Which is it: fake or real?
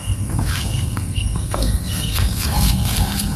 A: fake